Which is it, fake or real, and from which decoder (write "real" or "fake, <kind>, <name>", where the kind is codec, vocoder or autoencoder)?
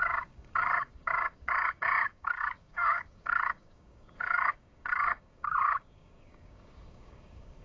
fake, codec, DAC